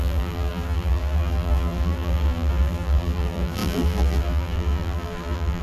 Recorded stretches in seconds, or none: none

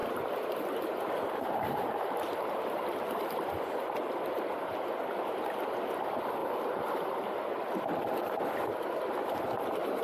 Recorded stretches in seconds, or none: 3.9-6.4; 7.3-10.0

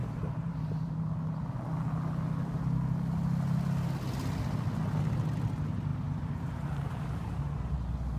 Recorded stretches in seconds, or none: 0.9-5.9; 7.4-8.2

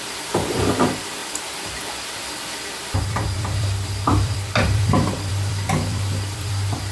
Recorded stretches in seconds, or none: none

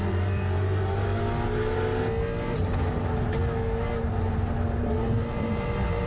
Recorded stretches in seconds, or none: 1.1-4.8

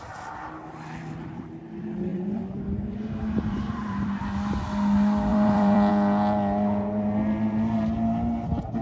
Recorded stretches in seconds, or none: 0.0-2.1; 4.2-5.3; 5.9-8.8

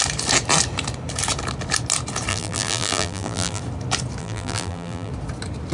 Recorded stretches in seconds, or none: 0.0-2.3; 3.6-4.2; 5.1-5.7